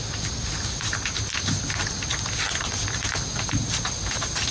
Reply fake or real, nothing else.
real